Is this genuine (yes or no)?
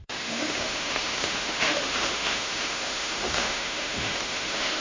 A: no